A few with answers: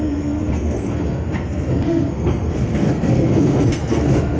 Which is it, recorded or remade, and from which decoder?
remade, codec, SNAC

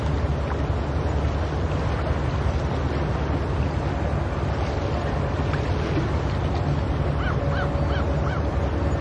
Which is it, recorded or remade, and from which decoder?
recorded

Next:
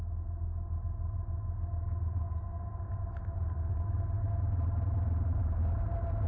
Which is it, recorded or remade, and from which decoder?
recorded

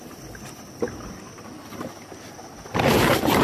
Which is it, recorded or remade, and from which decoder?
recorded